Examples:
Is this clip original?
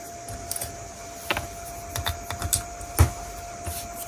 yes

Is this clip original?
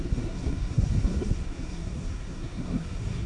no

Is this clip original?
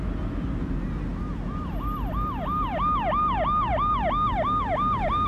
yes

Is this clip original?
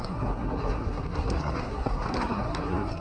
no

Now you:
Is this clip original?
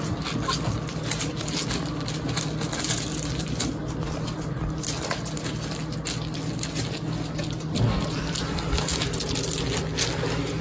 yes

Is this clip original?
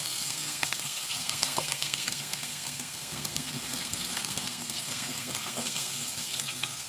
no